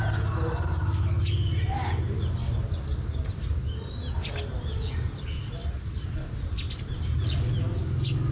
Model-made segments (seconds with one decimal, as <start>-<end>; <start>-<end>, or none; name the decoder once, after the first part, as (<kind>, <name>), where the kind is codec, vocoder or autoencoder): none